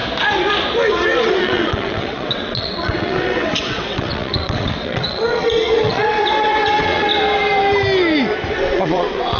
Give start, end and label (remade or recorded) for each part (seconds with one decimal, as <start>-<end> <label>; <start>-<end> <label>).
0.0-1.2 recorded; 1.2-7.1 remade; 7.1-8.5 recorded; 8.5-9.4 remade